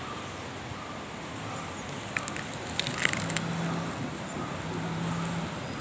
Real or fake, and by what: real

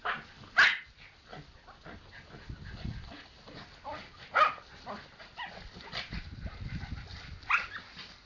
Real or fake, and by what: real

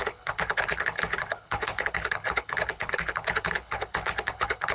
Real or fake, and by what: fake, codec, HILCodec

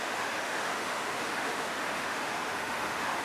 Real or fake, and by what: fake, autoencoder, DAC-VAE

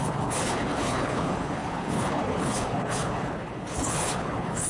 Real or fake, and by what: fake, codec, HILCodec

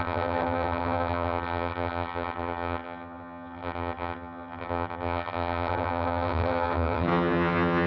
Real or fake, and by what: fake, vocoder, HiFi-GAN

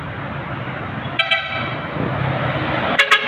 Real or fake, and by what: real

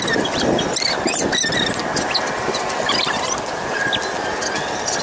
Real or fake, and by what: real